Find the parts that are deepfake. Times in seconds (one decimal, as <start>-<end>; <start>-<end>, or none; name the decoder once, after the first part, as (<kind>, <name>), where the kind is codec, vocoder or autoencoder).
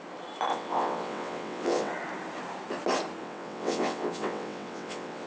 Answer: 0.5-1.9 (vocoder, WaveNeXt); 3.2-5.3